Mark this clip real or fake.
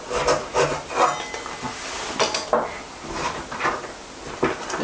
real